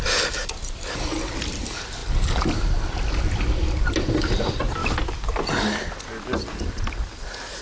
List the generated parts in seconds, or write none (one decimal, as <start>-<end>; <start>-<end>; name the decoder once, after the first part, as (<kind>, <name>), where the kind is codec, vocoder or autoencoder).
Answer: none